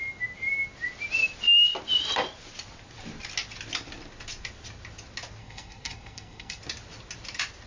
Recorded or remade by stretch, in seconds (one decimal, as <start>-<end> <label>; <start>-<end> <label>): 0.0-5.4 recorded; 5.4-6.6 remade; 6.6-7.7 recorded